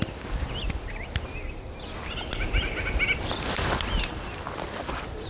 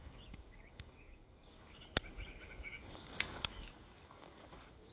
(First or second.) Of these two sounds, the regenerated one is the second